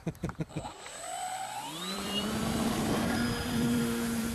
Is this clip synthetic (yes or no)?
yes